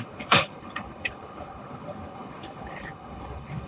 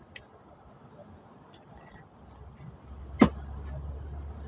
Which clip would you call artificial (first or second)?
first